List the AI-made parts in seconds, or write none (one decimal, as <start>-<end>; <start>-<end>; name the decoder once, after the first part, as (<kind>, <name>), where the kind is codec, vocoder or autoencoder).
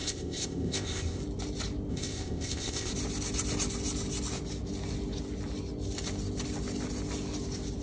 0.0-1.2 (codec, ZipCodec); 1.9-2.9